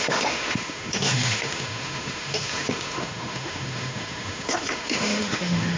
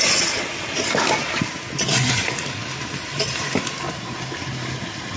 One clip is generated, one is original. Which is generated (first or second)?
first